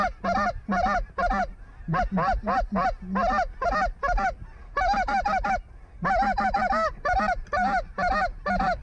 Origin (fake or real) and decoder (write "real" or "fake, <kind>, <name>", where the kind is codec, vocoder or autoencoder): real